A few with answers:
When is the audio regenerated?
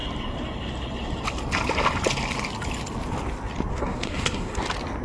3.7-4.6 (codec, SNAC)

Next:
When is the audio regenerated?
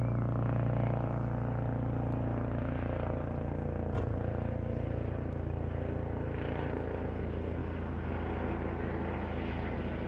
none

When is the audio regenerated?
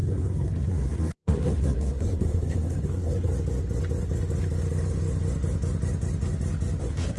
0.0-3.3 (codec, SNAC); 6.8-7.2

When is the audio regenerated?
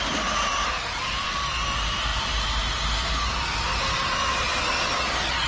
none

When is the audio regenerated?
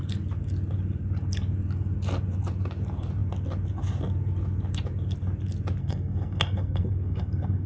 5.8-7.7 (codec, SNAC)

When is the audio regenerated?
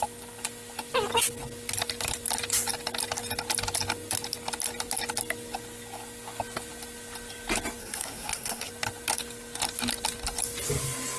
7.8-8.7 (codec, SNAC)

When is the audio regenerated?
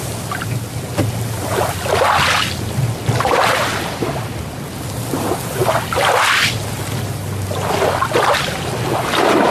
none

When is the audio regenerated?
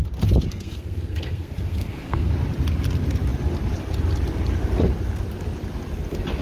0.5-2.3 (codec, SNAC)